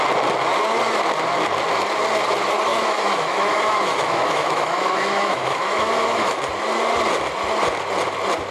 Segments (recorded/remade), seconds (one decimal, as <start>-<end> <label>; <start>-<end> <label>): 0.0-2.7 recorded; 2.7-6.4 remade; 6.4-8.5 recorded